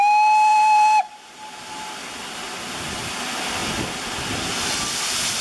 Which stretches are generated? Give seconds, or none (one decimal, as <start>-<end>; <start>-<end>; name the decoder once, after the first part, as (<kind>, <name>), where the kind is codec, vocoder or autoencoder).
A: 0.5-1.9 (vocoder, BigVGAN v2)